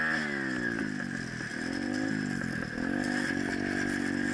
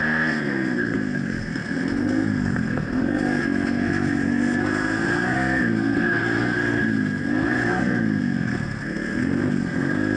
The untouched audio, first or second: first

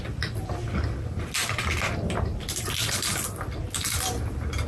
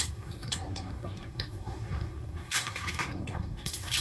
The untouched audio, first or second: first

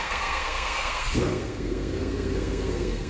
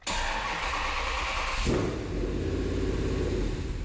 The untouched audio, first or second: second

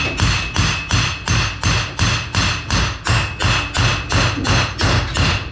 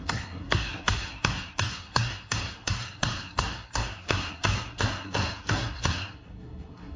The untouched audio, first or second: first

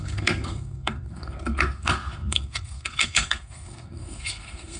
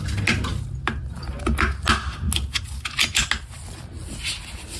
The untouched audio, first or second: second